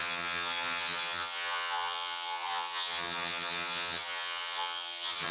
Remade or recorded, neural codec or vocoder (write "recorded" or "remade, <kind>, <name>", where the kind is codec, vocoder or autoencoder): remade, vocoder, HiFi-GAN